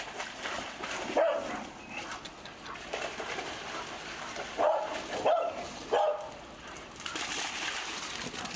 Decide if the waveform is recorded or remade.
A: recorded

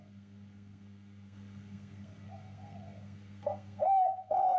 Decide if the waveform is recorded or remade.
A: remade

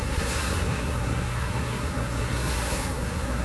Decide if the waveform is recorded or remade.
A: remade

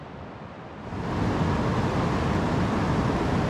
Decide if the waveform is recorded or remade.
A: recorded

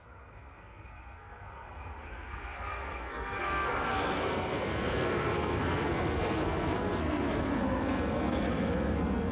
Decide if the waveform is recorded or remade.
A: remade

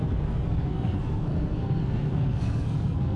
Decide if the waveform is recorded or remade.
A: remade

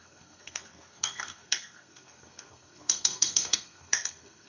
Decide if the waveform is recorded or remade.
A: remade